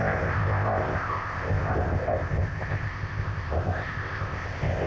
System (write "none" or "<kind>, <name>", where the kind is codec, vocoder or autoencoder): codec, ZipCodec